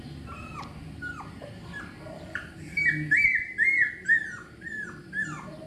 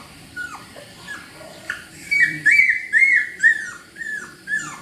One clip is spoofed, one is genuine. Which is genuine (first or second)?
first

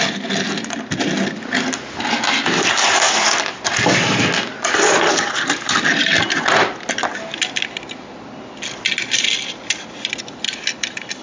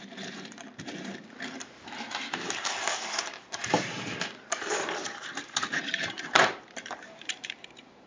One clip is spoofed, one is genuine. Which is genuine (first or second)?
first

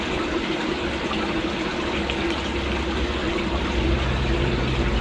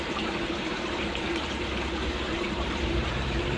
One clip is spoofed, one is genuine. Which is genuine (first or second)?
first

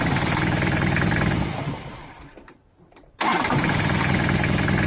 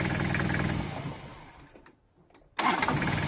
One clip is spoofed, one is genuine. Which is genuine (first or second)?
second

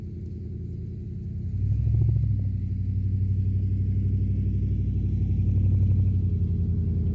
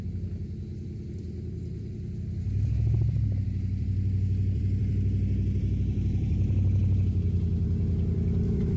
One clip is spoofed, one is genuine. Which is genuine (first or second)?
first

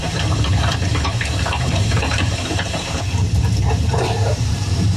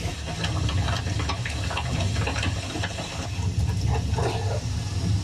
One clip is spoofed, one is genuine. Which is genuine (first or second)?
second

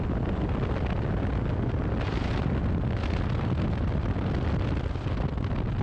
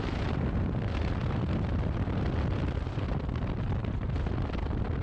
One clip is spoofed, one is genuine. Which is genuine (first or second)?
first